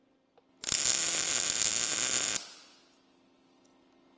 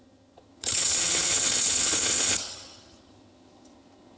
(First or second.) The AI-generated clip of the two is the second